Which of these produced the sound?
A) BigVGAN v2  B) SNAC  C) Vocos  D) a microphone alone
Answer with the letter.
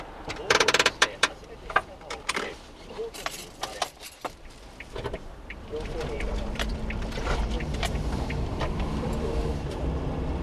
A